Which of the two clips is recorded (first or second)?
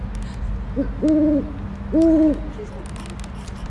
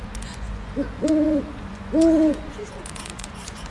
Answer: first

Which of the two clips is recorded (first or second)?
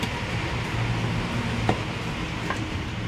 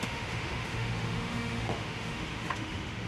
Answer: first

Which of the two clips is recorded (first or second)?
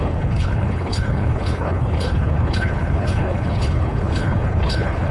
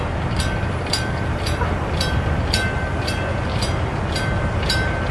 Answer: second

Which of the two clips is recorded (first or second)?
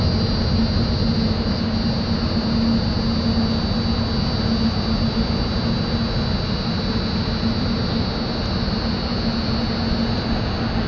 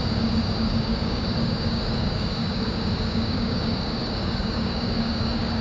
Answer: first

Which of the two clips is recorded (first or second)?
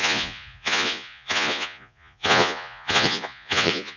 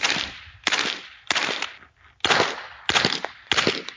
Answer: second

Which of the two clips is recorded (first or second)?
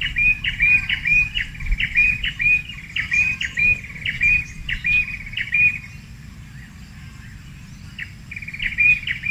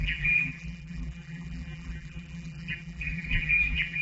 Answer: first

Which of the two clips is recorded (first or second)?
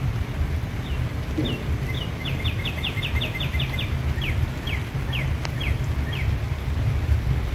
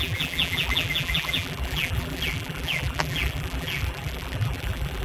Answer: first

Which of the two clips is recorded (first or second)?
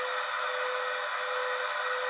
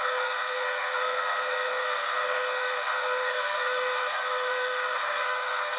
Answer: first